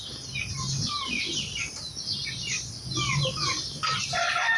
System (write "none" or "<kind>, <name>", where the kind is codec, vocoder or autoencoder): none